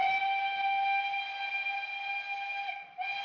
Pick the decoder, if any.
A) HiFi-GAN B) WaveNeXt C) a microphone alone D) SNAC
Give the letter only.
C